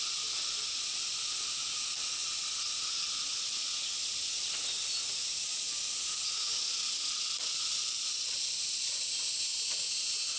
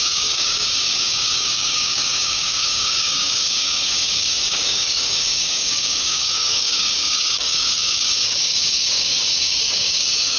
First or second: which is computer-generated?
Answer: second